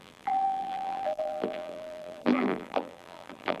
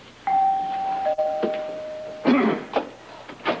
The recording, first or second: second